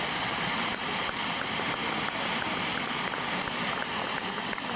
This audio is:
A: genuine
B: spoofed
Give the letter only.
A